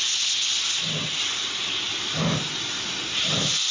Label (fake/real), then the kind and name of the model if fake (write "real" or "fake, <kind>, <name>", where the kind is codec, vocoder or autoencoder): real